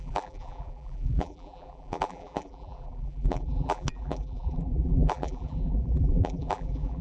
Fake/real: fake